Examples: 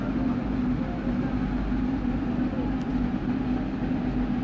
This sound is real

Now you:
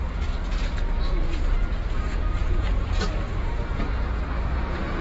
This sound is fake